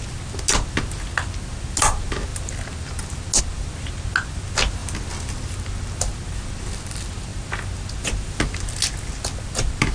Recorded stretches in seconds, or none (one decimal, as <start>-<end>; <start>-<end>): 0.0-9.9